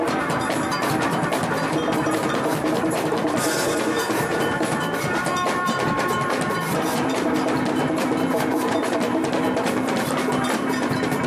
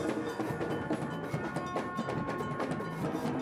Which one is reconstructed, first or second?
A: first